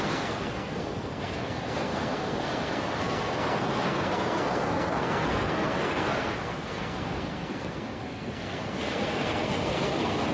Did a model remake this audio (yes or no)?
yes